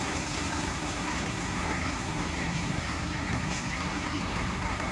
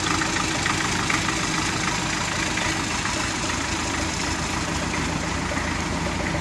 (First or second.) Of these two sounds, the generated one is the first